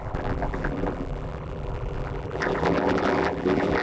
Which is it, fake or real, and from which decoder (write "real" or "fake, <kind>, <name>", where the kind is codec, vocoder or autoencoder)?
fake, vocoder, BigVGAN v2